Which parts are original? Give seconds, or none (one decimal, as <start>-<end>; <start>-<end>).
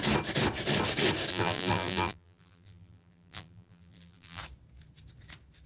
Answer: 0.0-1.3; 4.4-5.7